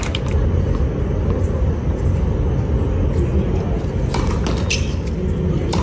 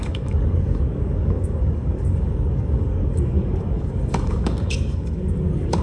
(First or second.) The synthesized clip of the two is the second